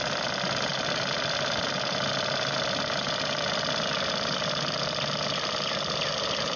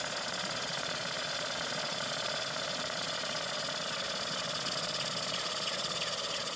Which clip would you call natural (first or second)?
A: first